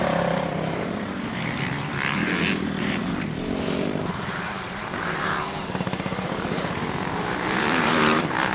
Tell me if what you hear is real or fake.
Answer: fake